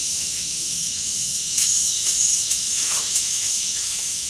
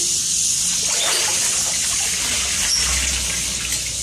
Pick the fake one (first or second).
first